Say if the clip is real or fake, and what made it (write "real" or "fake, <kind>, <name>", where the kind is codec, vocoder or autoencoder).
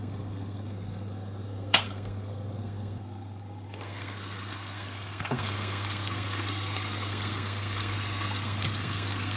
fake, codec, SNAC